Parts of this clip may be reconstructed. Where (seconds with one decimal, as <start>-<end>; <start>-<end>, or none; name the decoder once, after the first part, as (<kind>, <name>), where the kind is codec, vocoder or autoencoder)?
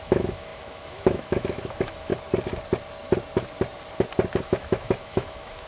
0.0-2.1 (autoencoder, DAC-VAE); 4.4-5.7